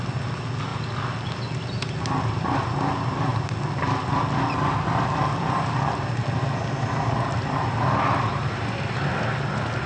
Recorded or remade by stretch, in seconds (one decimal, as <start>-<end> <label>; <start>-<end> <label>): 0.0-9.9 recorded